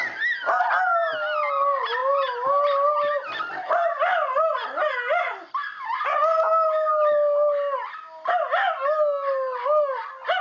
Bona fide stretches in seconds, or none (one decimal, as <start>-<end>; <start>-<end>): 0.0-10.4